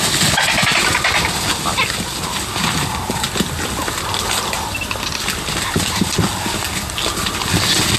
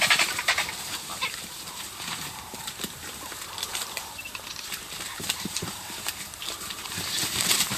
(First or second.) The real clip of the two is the first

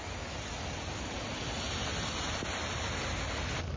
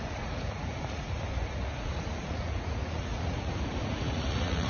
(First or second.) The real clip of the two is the first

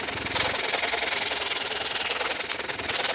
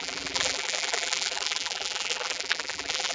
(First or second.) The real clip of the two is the first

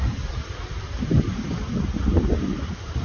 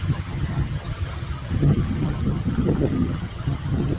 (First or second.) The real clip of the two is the first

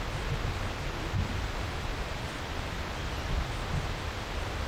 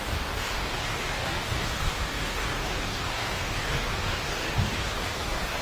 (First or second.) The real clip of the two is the first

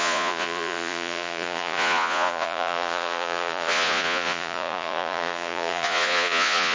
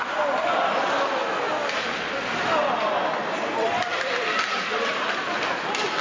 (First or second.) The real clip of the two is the second